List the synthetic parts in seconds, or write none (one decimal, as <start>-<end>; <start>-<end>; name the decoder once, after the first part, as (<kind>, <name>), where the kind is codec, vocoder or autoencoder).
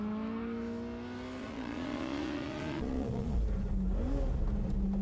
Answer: 1.4-3.4 (vocoder, Vocos)